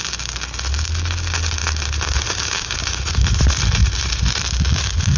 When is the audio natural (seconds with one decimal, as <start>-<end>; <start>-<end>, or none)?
0.0-1.6; 4.4-5.2